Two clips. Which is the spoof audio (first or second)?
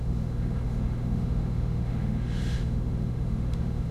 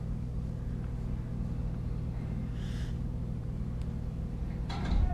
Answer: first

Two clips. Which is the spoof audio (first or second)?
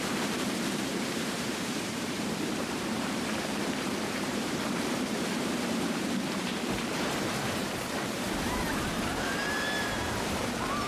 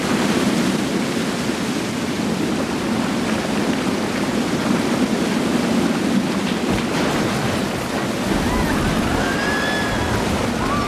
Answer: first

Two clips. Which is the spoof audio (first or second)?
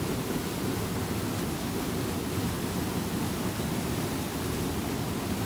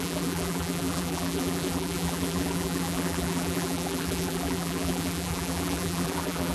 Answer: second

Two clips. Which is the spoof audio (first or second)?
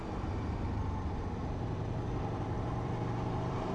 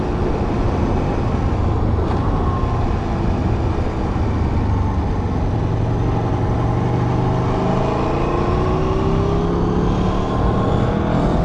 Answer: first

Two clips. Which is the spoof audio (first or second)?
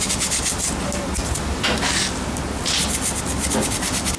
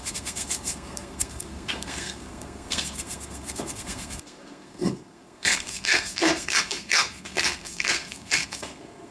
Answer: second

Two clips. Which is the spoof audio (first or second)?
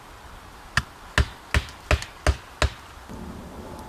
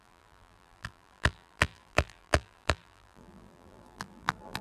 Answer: second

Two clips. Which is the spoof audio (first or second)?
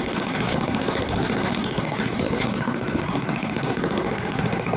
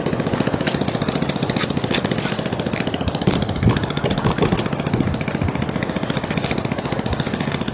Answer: first